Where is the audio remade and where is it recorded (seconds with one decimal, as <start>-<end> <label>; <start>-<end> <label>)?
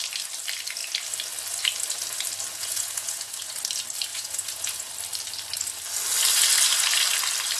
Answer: 0.0-2.5 recorded; 2.5-3.5 remade; 3.5-4.1 recorded; 4.1-4.9 remade; 4.9-7.6 recorded